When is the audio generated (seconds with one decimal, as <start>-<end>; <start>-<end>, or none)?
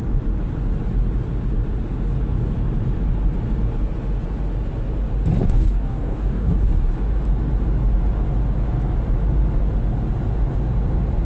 5.4-6.5